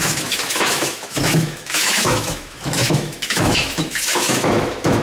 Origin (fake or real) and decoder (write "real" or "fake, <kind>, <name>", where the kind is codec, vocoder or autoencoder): fake, autoencoder, DAC-VAE